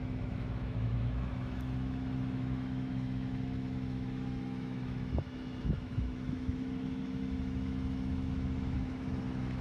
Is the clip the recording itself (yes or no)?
no